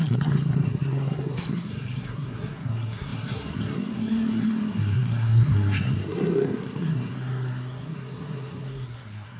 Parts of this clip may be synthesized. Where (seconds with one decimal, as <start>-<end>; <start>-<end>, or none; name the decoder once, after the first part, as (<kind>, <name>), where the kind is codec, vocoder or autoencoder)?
0.0-9.4 (codec, SNAC)